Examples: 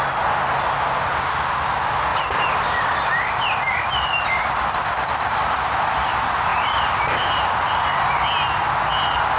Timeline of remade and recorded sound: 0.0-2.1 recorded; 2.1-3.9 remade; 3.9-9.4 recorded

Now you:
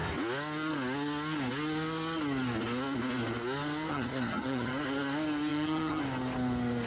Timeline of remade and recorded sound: 0.0-3.9 recorded; 3.9-4.7 remade; 4.7-5.5 recorded; 5.5-6.0 remade; 6.0-6.9 recorded

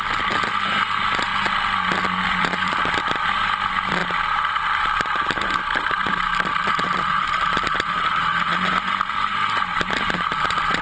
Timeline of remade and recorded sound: 0.0-1.3 remade; 1.3-2.0 recorded; 2.0-4.0 remade; 4.0-4.5 recorded; 4.5-8.5 remade; 8.5-9.1 recorded; 9.1-10.8 remade

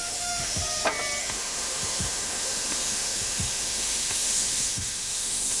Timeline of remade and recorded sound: 0.0-0.6 remade; 0.6-1.2 recorded; 1.2-5.6 remade

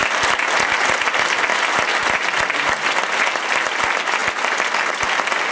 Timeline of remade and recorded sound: 0.0-5.5 recorded

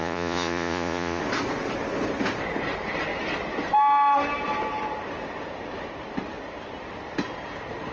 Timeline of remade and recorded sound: 0.0-1.2 remade; 1.2-7.9 recorded